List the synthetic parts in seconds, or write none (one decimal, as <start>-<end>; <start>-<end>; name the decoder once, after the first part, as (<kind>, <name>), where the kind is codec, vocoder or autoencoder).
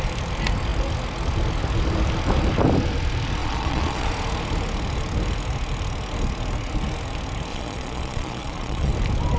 3.4-4.1 (vocoder, Vocos); 7.5-8.9